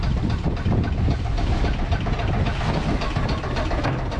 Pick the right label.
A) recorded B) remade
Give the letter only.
A